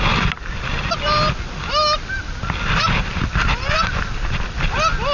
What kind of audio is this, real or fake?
real